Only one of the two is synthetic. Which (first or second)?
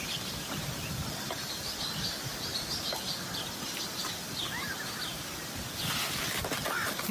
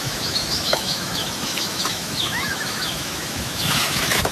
second